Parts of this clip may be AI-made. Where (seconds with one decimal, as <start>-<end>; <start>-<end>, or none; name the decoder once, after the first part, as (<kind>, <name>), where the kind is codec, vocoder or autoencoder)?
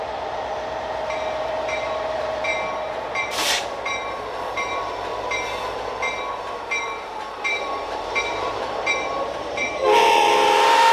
0.0-2.5 (vocoder, BigVGAN v2); 3.1-5.1; 6.3-10.9